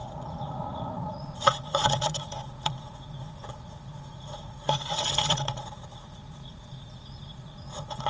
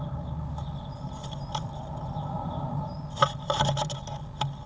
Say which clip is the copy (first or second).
first